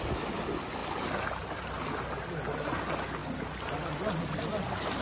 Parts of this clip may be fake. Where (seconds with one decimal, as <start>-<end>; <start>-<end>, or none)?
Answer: none

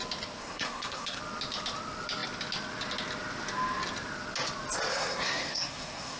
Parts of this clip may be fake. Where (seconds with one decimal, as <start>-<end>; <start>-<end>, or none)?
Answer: 0.4-1.2; 4.9-6.2

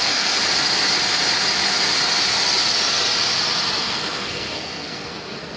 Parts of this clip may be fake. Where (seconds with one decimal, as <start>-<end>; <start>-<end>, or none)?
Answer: 0.0-0.4; 3.8-5.6